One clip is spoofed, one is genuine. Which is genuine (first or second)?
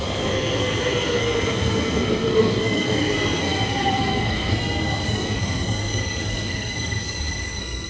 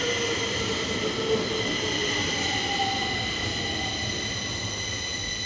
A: second